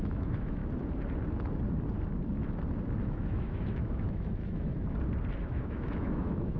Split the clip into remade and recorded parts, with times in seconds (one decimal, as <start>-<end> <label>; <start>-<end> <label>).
0.0-0.6 remade; 0.6-3.0 recorded; 3.0-4.7 remade; 4.7-5.4 recorded; 5.4-6.6 remade